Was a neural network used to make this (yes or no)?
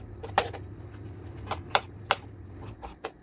yes